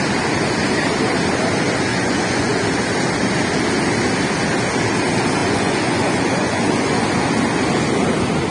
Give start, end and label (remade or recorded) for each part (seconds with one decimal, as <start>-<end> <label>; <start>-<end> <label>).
0.0-1.9 recorded; 1.9-2.6 remade; 2.6-5.4 recorded; 5.4-7.0 remade; 7.0-8.5 recorded